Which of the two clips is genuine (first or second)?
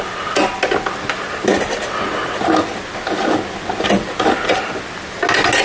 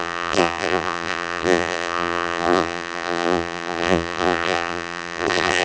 first